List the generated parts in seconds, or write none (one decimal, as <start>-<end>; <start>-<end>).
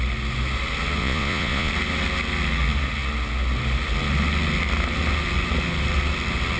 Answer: 1.0-1.7